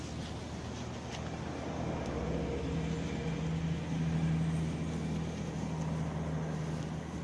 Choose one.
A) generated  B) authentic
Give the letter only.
B